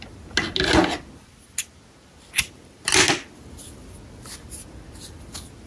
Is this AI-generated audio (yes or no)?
no